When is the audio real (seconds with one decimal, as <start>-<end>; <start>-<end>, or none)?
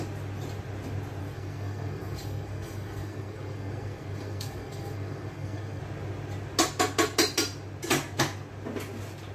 0.0-1.2; 5.8-9.3